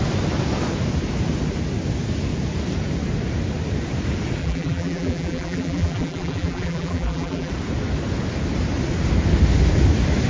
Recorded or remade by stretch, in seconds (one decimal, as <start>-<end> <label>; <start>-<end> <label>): 0.0-4.4 recorded; 4.4-7.5 remade; 7.5-10.3 recorded